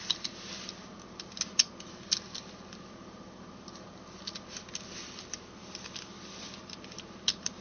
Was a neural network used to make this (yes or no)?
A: no